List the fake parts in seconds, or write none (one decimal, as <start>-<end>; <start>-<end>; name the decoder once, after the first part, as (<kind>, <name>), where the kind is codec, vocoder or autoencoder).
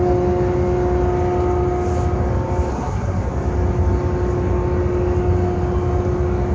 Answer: 2.7-3.2 (codec, SNAC)